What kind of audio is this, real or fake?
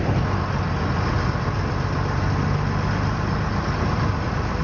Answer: real